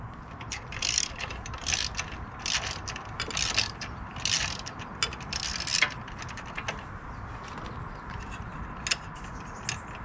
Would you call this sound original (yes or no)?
yes